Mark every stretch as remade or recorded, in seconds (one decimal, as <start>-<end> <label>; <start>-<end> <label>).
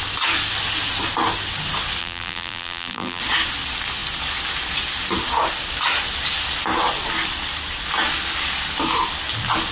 0.0-2.0 recorded; 2.0-3.2 remade; 3.2-9.7 recorded